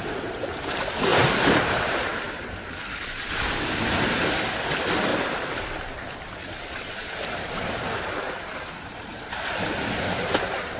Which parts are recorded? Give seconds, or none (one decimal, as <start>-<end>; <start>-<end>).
2.1-4.2